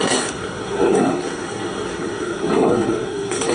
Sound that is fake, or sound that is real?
fake